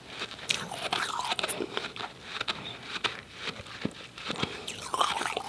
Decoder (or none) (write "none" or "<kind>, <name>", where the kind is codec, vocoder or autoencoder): none